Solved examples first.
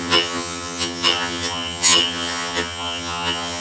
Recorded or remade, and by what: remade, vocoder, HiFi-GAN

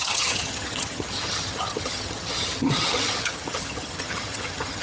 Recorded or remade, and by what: remade, vocoder, HiFi-GAN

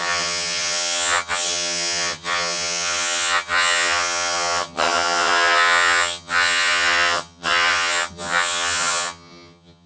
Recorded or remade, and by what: remade, vocoder, HiFi-GAN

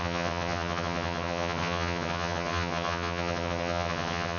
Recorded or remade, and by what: remade, vocoder, HiFi-GAN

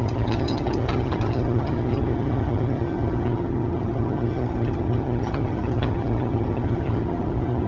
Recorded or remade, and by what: remade, vocoder, HiFi-GAN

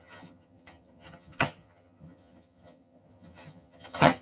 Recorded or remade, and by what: remade, vocoder, HiFi-GAN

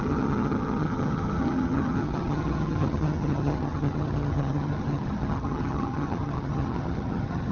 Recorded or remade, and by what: remade, vocoder, HiFi-GAN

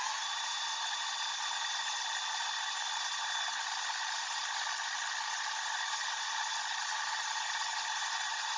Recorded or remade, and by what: recorded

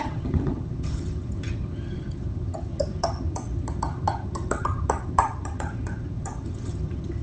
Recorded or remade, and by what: remade, vocoder, HiFi-GAN